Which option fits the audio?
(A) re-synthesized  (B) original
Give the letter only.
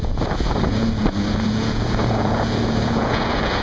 A